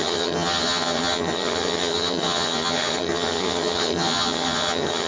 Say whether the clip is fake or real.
fake